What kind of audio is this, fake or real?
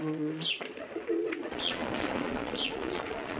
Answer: fake